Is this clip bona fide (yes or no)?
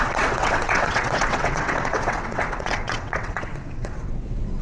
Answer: no